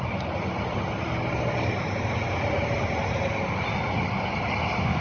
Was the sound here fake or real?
real